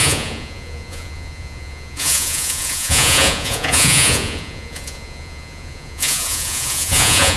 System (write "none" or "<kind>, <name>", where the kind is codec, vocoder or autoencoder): vocoder, Vocos